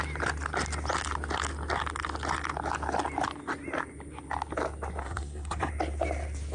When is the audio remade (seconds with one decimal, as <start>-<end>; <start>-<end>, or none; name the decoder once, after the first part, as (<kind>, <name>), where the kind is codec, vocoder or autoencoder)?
5.0-5.7 (codec, SNAC)